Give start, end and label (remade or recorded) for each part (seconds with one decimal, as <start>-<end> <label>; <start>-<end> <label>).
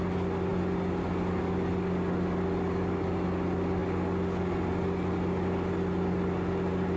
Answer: 0.0-7.0 recorded